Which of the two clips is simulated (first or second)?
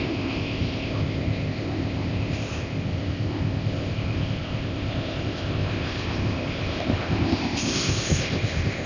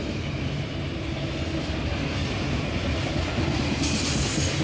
first